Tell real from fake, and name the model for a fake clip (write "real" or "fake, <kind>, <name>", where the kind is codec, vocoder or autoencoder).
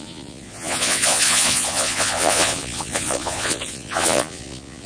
fake, vocoder, Vocos